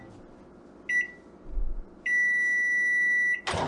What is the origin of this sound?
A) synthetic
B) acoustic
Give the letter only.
B